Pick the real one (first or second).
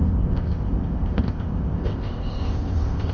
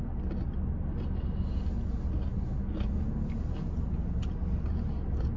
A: second